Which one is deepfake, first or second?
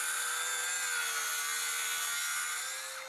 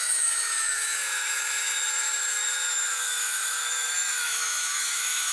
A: second